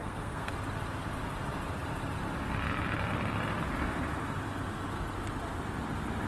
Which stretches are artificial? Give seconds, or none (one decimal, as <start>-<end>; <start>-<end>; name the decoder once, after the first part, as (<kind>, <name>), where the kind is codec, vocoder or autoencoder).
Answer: 0.0-0.5 (codec, SNAC)